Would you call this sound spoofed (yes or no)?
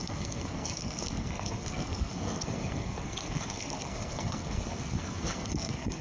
yes